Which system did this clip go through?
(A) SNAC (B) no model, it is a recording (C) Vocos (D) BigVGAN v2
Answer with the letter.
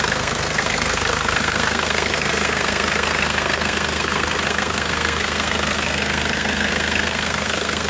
A